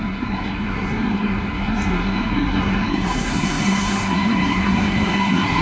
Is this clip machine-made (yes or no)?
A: yes